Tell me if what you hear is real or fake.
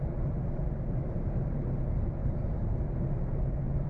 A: fake